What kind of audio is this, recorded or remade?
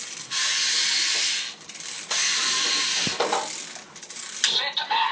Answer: recorded